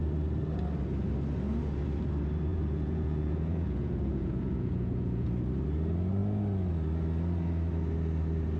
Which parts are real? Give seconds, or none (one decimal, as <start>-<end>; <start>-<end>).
0.0-2.5; 5.3-8.6